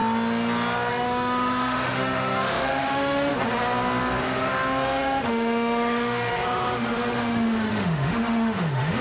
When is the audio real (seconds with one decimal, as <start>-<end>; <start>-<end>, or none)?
0.0-0.9; 3.3-4.2